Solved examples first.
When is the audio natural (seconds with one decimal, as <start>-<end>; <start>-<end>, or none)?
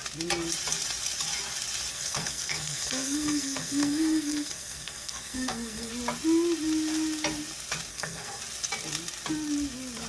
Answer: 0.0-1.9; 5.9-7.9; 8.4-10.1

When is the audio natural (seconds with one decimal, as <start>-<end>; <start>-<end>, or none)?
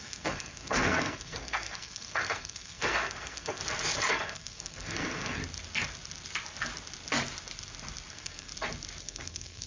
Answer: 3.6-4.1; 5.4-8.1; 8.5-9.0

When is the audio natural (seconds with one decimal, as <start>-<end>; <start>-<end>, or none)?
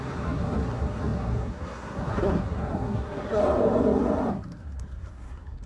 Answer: 3.4-4.3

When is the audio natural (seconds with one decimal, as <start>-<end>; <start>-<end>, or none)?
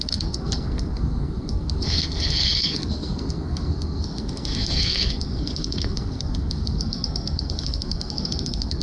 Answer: none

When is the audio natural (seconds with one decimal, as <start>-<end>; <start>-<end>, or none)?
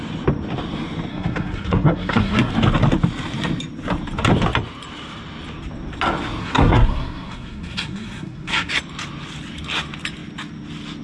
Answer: 0.0-1.1; 2.5-6.4; 8.7-11.0